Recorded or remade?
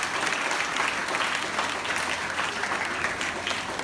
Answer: recorded